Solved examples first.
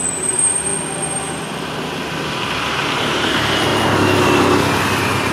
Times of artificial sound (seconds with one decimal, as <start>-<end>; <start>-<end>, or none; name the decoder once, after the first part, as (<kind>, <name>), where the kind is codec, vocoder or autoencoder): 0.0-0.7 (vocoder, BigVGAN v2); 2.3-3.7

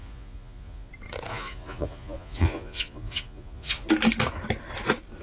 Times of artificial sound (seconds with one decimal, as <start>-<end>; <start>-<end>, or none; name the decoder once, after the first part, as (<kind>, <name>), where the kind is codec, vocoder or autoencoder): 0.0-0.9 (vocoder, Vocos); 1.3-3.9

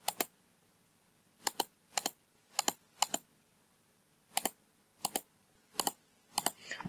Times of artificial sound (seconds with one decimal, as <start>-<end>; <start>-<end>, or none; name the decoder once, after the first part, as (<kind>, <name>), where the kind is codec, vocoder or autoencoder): none

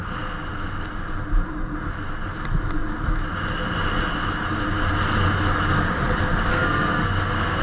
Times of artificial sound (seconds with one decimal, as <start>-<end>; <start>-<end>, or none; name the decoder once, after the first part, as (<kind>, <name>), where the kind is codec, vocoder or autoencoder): 6.5-7.6 (codec, SNAC)